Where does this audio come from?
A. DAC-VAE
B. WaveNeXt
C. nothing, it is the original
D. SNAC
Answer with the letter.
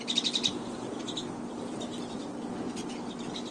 C